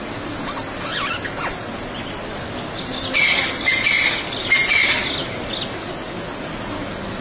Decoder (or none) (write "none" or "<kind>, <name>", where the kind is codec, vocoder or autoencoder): none